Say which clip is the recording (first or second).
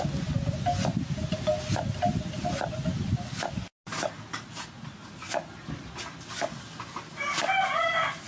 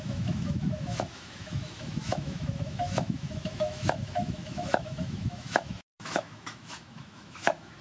first